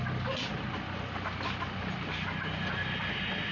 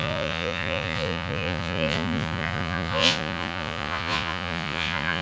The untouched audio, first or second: first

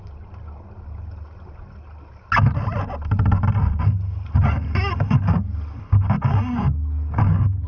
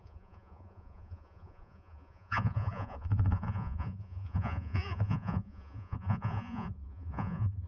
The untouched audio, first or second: first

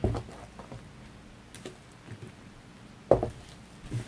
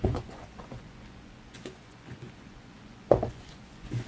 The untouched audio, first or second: first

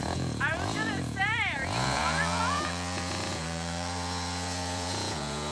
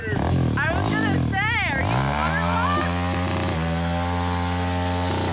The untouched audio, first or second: second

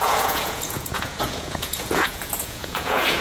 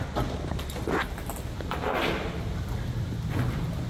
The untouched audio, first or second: second